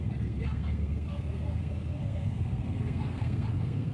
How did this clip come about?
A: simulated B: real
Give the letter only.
A